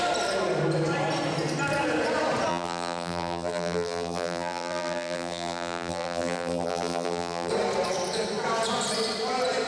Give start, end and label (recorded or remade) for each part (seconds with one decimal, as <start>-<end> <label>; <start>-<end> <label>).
0.0-2.5 recorded; 2.5-7.5 remade; 7.5-9.7 recorded